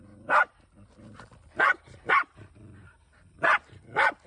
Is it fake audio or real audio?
real